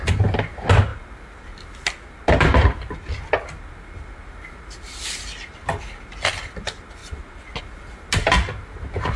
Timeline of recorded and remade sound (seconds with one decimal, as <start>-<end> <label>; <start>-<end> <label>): 0.0-9.2 recorded